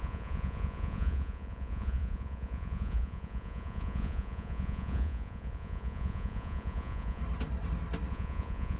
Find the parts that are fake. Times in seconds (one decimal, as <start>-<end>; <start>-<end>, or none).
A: 0.0-7.2; 8.1-8.8